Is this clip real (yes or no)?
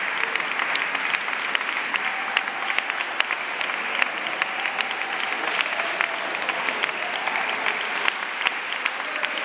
yes